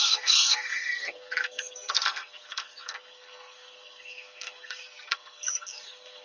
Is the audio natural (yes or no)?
no